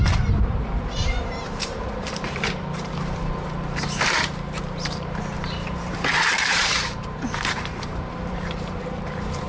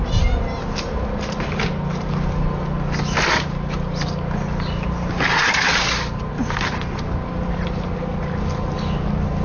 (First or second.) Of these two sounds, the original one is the second